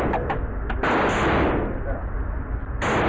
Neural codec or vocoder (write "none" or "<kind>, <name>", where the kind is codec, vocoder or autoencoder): none